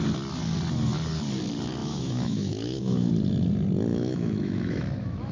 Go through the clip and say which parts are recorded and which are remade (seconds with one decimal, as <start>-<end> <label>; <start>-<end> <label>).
0.0-1.8 recorded; 1.8-3.1 remade; 3.1-3.9 recorded; 3.9-5.3 remade